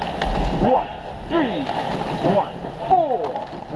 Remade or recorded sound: recorded